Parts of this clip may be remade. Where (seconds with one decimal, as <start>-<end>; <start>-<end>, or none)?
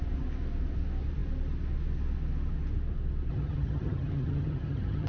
3.3-5.1